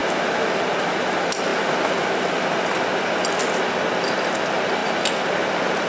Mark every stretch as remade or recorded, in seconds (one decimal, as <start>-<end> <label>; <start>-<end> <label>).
0.0-1.0 recorded; 1.0-4.8 remade; 4.8-5.5 recorded; 5.5-5.9 remade